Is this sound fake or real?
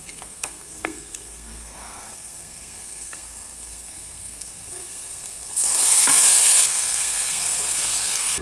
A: fake